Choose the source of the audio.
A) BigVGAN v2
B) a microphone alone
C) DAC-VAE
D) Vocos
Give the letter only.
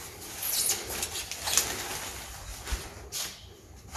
B